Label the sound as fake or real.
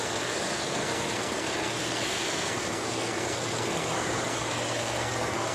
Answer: fake